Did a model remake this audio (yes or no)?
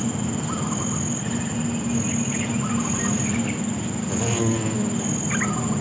no